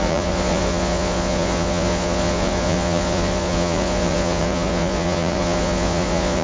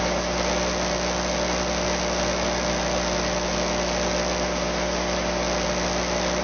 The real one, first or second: second